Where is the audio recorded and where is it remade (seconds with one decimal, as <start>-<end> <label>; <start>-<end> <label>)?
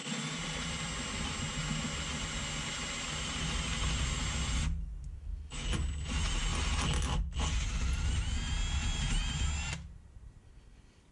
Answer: 0.0-0.7 remade; 0.7-11.1 recorded